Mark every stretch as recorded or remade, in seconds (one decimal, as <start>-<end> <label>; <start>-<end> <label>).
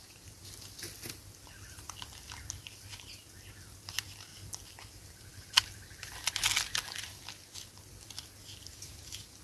0.0-9.4 recorded